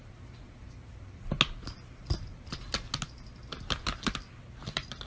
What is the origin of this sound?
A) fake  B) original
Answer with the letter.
B